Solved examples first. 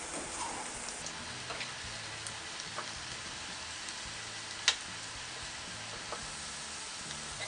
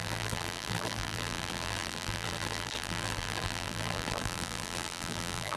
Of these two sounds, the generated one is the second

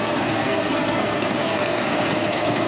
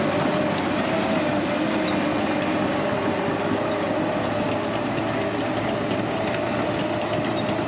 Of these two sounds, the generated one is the first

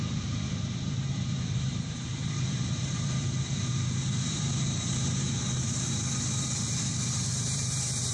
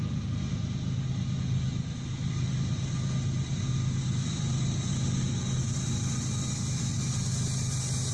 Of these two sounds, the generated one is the first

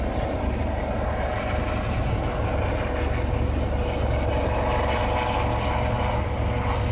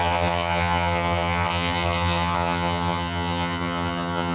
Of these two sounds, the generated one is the second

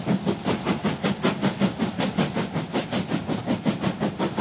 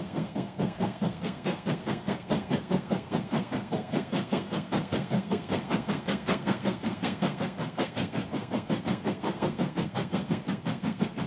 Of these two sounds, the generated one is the second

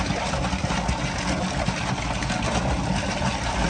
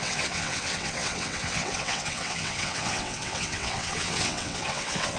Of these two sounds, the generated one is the second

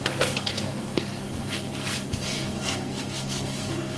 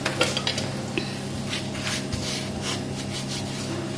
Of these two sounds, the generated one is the first